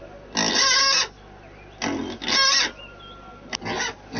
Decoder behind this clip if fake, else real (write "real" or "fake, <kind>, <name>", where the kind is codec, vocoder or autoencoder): real